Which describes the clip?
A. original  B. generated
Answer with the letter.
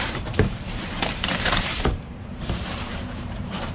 B